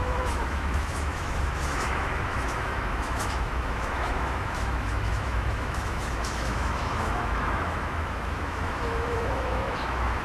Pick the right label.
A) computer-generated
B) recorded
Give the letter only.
A